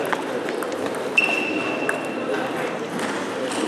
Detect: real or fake real